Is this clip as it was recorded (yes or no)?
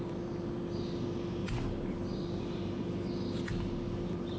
yes